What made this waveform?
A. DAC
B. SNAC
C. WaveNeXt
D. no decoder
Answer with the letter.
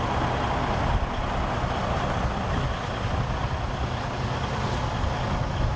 D